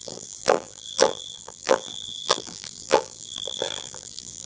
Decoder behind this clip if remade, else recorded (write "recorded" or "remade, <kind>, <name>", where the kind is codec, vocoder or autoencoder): remade, vocoder, BigVGAN v2